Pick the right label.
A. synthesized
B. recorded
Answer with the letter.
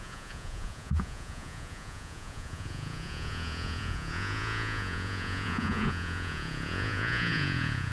A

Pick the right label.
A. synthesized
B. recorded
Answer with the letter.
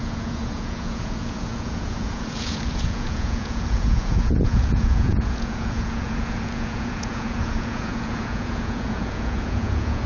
A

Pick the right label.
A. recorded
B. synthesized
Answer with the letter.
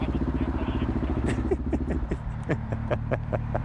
A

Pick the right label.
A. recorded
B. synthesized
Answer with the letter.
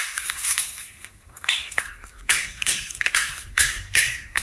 B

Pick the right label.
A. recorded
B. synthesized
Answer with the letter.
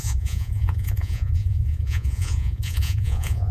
B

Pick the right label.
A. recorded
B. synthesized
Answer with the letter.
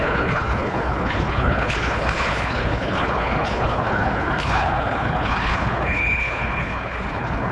B